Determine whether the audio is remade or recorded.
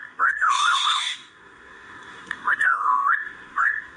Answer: remade